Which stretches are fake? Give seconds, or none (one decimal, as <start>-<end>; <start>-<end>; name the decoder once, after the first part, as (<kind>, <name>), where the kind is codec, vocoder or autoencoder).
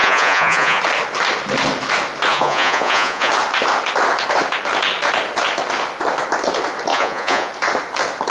0.0-0.8 (vocoder, Vocos); 2.3-3.3; 6.9-7.5